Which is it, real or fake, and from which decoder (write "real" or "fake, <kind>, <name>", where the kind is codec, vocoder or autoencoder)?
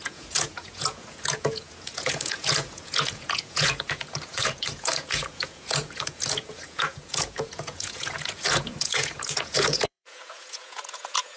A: fake, vocoder, Vocos